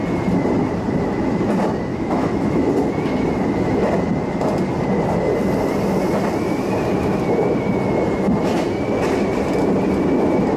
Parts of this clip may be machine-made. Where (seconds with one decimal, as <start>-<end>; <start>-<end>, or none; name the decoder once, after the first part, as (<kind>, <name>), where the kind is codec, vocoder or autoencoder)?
1.9-2.7 (autoencoder, DAC-VAE)